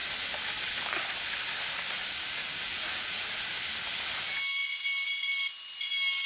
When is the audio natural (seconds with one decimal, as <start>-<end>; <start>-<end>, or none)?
0.0-6.3